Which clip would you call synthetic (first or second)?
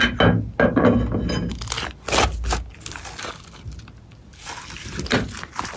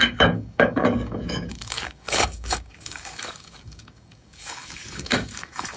second